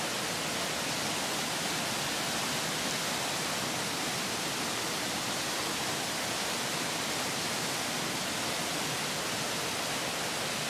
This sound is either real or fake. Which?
real